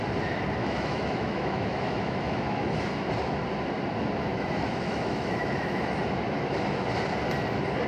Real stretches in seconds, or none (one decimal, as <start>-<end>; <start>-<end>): 0.0-0.6; 3.1-4.3; 6.0-7.9